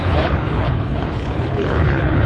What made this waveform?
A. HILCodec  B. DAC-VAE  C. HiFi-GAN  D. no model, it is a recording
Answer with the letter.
A